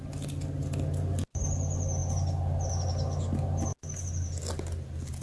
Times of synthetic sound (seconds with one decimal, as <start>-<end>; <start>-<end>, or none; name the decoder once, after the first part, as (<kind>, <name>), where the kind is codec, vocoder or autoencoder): none